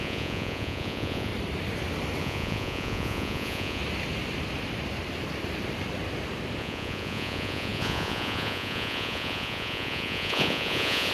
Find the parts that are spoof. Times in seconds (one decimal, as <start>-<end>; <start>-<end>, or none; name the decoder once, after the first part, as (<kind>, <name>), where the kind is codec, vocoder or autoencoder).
0.0-1.3 (vocoder, Vocos); 2.2-3.8; 6.6-11.1